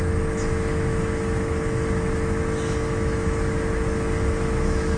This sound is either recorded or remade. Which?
remade